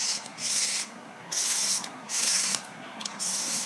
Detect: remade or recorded remade